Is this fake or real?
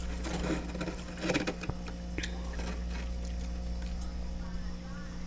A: real